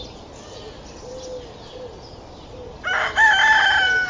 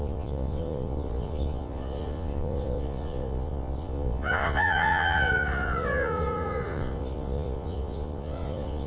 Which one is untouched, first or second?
first